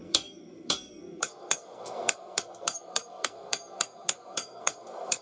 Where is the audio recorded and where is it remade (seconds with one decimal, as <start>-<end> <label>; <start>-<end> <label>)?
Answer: 0.0-5.2 remade